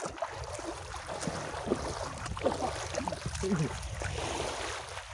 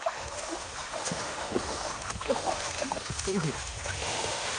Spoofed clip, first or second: second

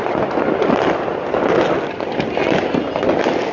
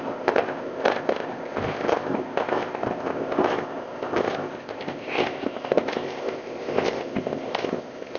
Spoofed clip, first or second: second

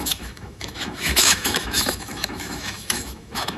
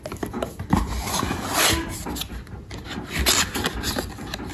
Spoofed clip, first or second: first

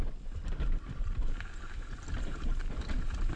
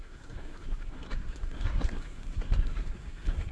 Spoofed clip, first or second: second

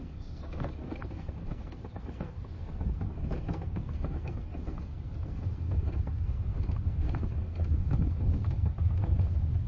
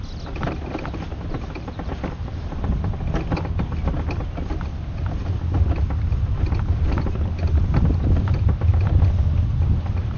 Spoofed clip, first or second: first